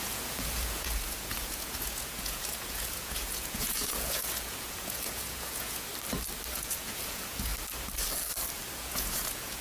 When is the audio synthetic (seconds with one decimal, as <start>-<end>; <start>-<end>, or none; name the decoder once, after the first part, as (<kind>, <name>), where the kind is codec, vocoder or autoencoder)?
0.0-5.9 (vocoder, Vocos); 6.5-7.5; 8.7-9.6